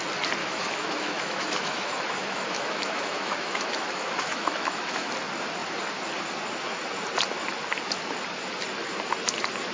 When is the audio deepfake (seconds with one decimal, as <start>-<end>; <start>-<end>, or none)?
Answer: 0.4-5.1